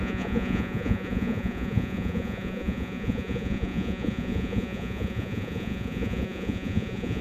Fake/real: fake